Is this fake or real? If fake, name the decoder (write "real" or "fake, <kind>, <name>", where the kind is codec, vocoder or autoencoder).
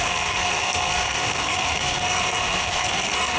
fake, codec, SNAC